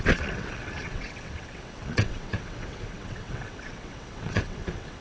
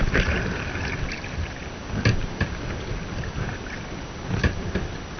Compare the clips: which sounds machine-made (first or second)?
first